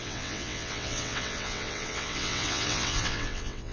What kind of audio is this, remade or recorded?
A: remade